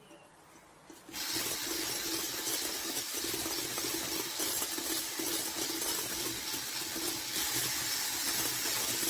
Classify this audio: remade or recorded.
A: recorded